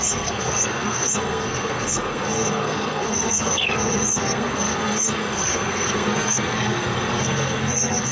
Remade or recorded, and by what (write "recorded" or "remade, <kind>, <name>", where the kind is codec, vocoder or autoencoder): remade, codec, SNAC